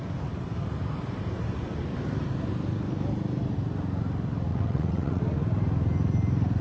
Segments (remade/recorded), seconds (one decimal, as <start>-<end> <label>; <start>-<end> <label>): 0.0-4.5 recorded; 4.5-5.2 remade; 5.2-6.6 recorded